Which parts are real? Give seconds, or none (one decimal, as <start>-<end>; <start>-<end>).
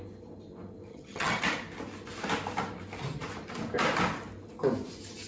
0.0-0.9; 1.4-5.3